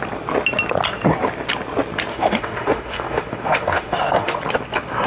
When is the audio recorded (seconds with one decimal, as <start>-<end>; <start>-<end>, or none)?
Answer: 0.0-2.1; 4.4-5.1